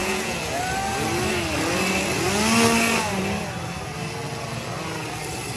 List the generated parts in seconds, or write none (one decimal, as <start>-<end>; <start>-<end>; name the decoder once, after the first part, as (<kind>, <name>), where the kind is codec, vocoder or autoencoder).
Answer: 0.0-0.6 (vocoder, Vocos)